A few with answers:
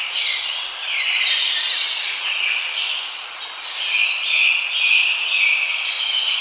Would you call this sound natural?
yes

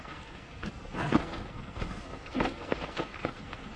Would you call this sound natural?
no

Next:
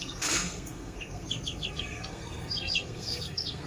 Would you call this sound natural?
no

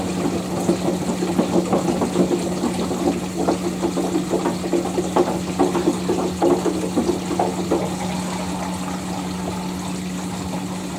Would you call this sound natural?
yes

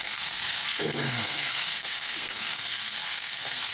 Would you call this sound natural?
no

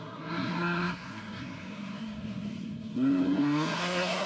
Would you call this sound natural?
no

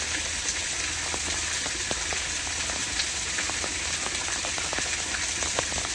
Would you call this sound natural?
yes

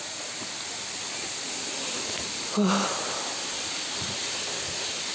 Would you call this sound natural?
yes